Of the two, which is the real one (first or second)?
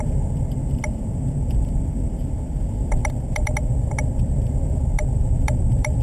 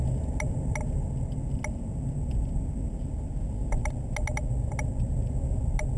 second